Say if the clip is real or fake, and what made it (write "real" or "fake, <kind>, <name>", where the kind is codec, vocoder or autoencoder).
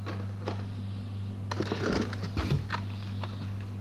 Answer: real